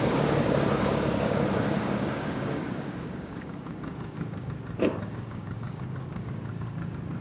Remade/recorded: remade